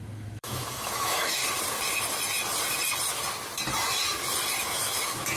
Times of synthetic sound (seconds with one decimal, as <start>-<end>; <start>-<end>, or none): 0.0-1.4; 4.6-5.4